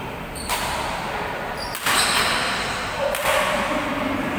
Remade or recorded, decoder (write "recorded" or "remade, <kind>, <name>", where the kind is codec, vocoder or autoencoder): recorded